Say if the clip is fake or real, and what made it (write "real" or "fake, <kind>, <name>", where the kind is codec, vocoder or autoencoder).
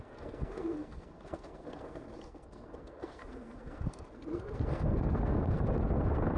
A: fake, codec, SNAC